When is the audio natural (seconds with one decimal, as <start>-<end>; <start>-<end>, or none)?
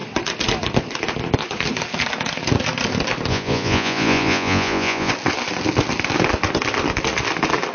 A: 0.0-3.3; 5.1-7.7